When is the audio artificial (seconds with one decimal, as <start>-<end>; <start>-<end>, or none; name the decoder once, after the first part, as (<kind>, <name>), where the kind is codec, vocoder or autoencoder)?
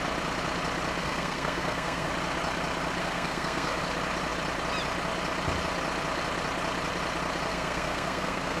1.0-2.1 (codec, SNAC); 3.0-3.8; 7.5-8.6